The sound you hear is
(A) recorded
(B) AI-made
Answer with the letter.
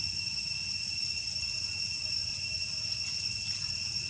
A